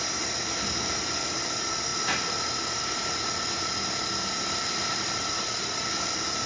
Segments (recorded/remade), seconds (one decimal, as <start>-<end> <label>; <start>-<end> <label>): 0.0-6.5 recorded